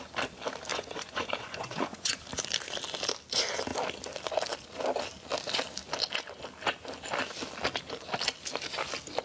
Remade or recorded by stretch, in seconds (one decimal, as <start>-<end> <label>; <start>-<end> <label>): 0.0-0.7 recorded; 0.7-2.2 remade; 2.2-9.2 recorded